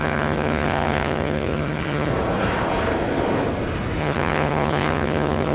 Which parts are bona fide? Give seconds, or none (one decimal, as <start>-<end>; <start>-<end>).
2.1-4.0